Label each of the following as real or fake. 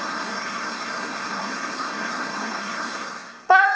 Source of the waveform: fake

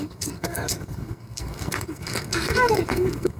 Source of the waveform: fake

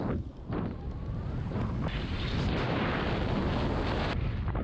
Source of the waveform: real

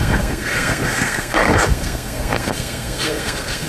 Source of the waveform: fake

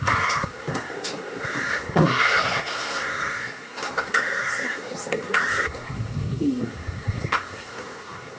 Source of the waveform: fake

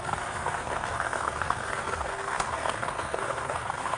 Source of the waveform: fake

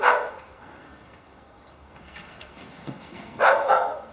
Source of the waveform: fake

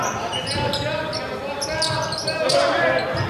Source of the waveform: real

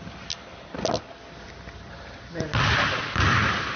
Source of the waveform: real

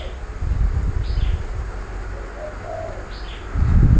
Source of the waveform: real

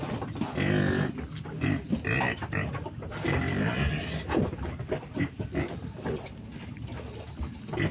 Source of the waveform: real